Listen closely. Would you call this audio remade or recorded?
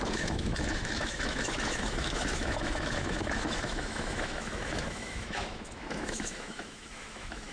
remade